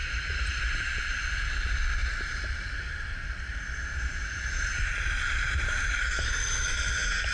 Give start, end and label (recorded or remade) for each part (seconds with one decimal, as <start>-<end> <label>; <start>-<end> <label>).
0.0-1.0 remade; 1.0-2.0 recorded; 2.0-6.4 remade; 6.4-7.3 recorded

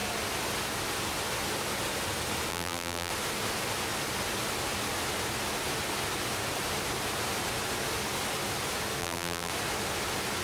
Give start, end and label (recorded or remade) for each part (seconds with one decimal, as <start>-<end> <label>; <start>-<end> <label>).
0.0-2.5 recorded; 2.5-3.1 remade; 3.1-9.0 recorded; 9.0-9.5 remade; 9.5-10.4 recorded

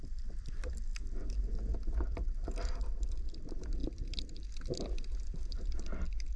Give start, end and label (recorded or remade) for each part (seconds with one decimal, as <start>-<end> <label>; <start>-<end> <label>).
0.0-0.9 remade; 0.9-2.0 recorded; 2.0-6.4 remade